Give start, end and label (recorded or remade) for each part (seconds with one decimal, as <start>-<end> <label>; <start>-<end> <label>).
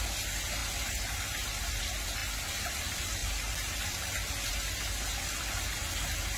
0.0-6.4 recorded